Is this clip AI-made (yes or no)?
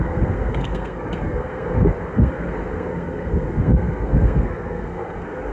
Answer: yes